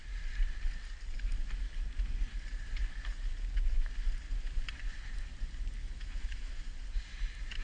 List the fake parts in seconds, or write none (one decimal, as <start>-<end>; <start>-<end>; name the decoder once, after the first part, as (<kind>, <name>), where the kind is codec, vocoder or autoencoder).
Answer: 5.8-6.6 (autoencoder, DAC-VAE)